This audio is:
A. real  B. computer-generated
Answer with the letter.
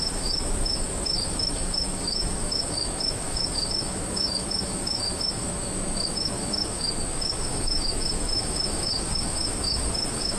B